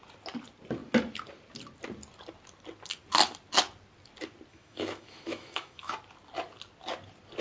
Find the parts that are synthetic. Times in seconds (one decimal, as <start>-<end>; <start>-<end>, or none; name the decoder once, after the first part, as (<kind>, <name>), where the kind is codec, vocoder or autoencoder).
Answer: 4.5-5.9 (autoencoder, DAC-VAE)